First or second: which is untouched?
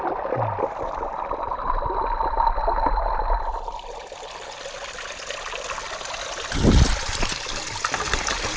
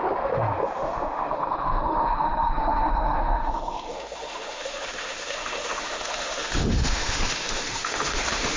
first